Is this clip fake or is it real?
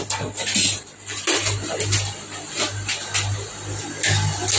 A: real